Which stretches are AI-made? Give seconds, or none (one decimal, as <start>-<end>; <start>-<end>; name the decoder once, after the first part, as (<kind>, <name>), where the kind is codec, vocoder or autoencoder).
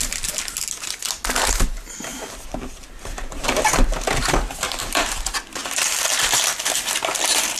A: 2.1-4.8 (vocoder, BigVGAN v2); 5.6-6.1